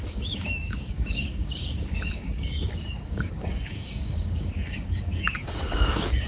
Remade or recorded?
remade